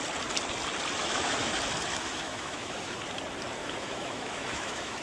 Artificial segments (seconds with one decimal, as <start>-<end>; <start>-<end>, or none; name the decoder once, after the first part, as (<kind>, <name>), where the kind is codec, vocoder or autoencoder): 1.0-1.5 (autoencoder, DAC-VAE); 1.9-3.0; 3.6-5.0